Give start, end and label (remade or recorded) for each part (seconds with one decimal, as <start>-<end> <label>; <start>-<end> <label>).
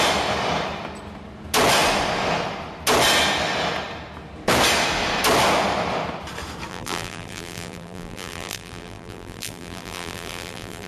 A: 0.0-6.7 recorded; 6.7-10.9 remade